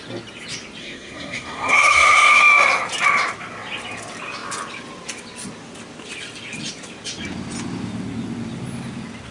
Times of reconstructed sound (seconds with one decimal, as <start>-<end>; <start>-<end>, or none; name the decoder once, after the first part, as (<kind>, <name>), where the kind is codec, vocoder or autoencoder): 0.8-2.4 (codec, SNAC)